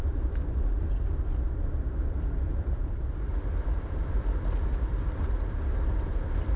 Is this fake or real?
fake